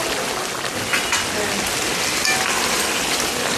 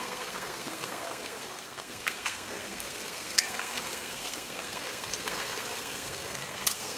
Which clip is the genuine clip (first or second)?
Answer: first